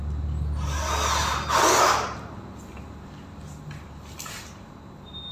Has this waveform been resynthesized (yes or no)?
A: no